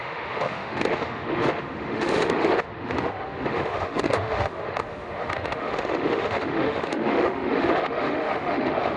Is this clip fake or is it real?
fake